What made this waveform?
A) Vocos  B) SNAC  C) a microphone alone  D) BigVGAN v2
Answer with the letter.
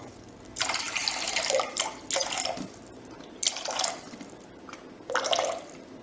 C